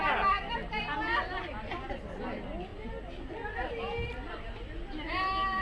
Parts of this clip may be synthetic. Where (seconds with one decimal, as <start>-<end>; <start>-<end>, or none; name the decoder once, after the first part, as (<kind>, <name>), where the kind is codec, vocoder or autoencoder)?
none